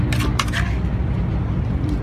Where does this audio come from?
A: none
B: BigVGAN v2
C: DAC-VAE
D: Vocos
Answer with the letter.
A